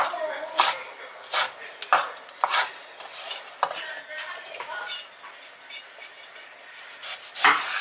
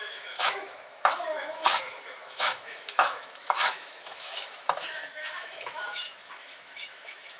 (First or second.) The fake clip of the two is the second